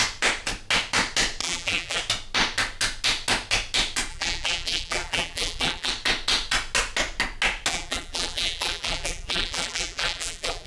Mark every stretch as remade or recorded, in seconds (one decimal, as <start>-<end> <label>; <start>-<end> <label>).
0.0-1.4 recorded; 1.4-2.0 remade; 2.0-4.1 recorded; 4.1-5.9 remade; 5.9-7.7 recorded; 7.7-10.7 remade